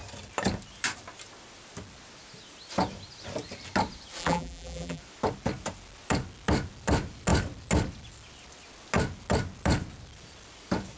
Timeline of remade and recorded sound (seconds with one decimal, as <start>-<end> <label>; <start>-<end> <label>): 0.0-4.2 recorded; 4.2-5.0 remade; 5.0-11.0 recorded